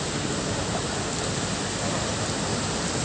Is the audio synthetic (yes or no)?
no